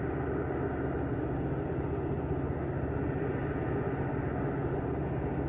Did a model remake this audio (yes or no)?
no